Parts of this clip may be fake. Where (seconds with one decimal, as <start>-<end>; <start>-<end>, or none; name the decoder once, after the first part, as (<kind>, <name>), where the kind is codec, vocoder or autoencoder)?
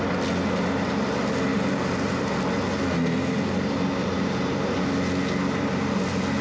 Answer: 1.5-2.3 (vocoder, BigVGAN v2); 4.0-4.8